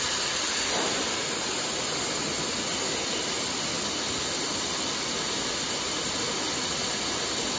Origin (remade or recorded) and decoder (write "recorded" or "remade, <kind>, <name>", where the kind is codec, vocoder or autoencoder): recorded